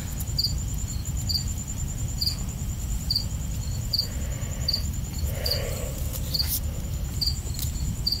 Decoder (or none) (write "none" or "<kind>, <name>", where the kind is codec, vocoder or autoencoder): none